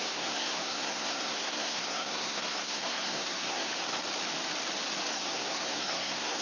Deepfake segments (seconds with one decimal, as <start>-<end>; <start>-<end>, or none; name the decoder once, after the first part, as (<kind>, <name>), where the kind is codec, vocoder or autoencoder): 0.0-3.7 (codec, SNAC); 5.1-6.4